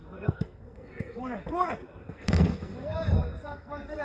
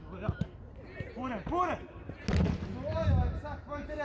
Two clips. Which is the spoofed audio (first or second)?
first